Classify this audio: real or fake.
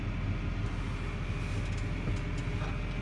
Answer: real